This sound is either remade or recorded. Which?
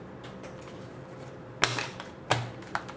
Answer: recorded